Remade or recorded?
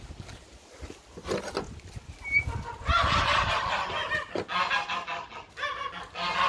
recorded